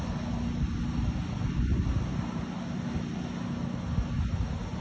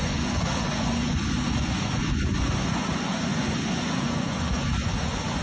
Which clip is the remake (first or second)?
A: second